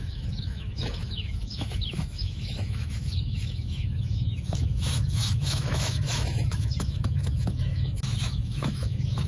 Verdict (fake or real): fake